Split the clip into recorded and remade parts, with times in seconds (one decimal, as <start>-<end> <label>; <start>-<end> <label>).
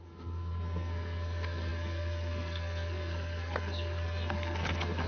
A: 0.0-5.1 remade